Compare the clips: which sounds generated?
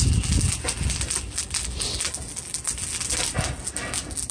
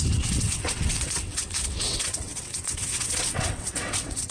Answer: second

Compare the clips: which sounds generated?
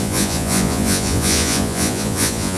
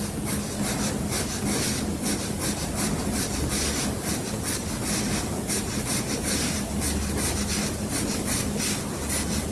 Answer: first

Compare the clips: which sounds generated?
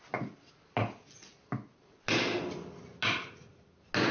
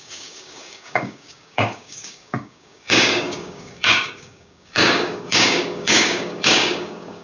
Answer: second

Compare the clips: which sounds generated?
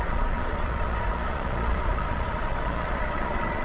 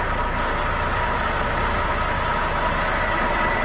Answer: first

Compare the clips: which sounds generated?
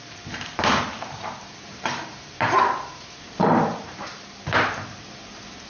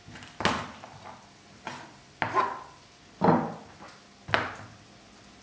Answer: first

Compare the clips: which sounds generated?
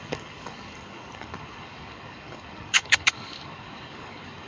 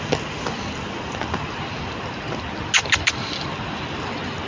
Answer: first